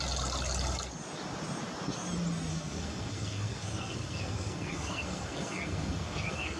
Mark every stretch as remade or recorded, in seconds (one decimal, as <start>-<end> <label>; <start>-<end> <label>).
0.0-2.5 recorded; 2.5-6.6 remade